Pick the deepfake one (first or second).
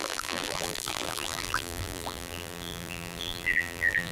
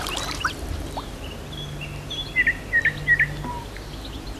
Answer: first